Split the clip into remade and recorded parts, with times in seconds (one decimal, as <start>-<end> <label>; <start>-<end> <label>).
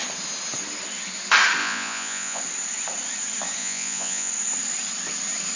0.0-1.6 recorded; 1.6-2.4 remade; 2.4-3.6 recorded; 3.6-4.3 remade; 4.3-5.6 recorded